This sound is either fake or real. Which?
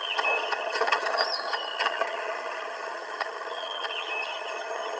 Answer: fake